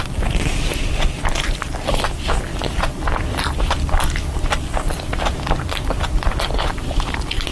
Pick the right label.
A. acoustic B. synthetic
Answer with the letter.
B